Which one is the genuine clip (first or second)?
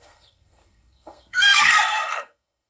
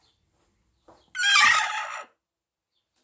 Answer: second